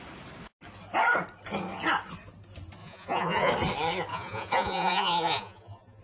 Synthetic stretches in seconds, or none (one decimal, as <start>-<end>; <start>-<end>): 2.8-3.5; 4.1-6.0